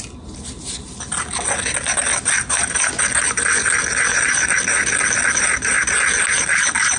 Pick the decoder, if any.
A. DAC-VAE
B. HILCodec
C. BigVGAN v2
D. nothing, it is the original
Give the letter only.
D